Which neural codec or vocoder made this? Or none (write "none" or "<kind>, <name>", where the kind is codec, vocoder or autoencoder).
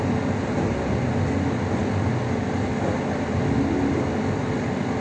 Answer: none